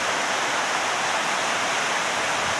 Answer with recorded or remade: recorded